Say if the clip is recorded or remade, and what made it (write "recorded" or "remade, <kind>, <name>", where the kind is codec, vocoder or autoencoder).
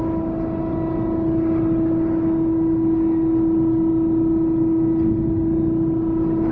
recorded